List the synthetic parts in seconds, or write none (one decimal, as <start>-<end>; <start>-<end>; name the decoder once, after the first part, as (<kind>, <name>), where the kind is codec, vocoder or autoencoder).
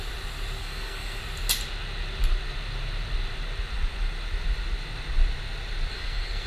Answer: 0.6-1.2 (codec, SNAC); 5.9-6.5